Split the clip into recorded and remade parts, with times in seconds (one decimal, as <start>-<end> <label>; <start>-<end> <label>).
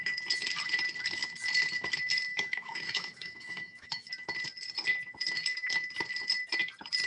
0.0-2.3 recorded; 2.3-4.1 remade; 4.1-7.1 recorded